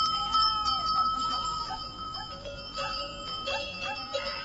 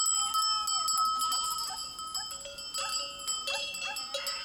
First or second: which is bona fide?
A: second